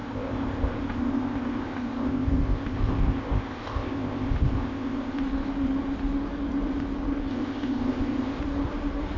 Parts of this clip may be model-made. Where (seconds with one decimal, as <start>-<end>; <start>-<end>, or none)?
0.0-5.2; 7.3-8.4